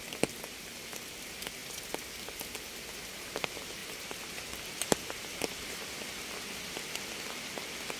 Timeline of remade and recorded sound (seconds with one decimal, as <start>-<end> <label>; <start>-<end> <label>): 0.0-3.8 recorded; 3.8-5.9 remade; 5.9-8.0 recorded